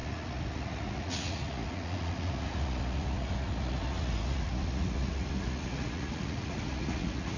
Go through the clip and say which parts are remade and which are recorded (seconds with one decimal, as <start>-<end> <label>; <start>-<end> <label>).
0.0-7.4 remade